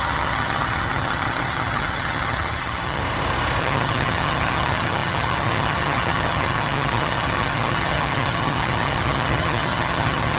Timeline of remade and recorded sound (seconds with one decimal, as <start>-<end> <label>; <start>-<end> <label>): 0.0-3.0 remade; 3.0-3.6 recorded; 3.6-10.4 remade